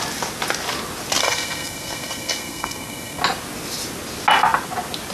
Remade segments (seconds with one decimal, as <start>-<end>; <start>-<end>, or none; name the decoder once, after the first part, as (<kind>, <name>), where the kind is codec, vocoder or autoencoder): 1.2-3.2 (codec, SNAC)